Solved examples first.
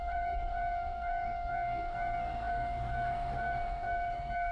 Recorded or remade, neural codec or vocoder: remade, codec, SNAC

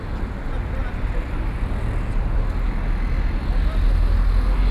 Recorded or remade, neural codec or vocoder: recorded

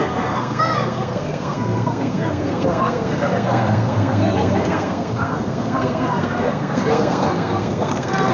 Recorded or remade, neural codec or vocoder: remade, codec, SNAC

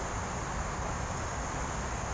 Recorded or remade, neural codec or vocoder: recorded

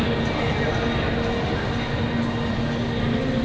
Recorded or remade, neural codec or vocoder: recorded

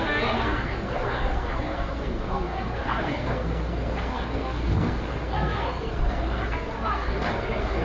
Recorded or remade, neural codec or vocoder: remade, codec, SNAC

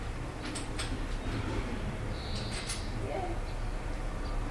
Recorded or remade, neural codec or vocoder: recorded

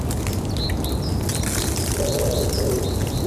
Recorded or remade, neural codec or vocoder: recorded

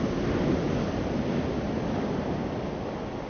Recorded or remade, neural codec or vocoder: recorded